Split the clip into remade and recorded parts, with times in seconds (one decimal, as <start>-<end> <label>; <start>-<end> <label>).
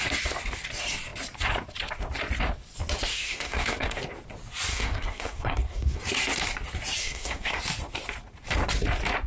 0.0-3.1 recorded; 3.1-4.0 remade; 4.0-4.7 recorded; 4.7-6.0 remade; 6.0-7.0 recorded; 7.0-7.6 remade; 7.6-9.3 recorded